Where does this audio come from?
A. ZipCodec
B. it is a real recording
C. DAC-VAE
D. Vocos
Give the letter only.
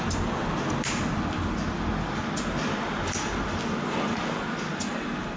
B